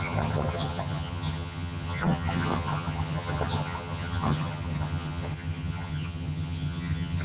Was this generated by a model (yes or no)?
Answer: yes